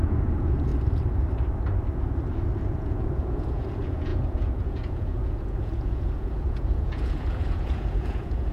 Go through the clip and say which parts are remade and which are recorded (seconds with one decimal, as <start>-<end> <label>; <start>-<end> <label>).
0.0-0.7 remade; 0.7-2.7 recorded; 2.7-8.5 remade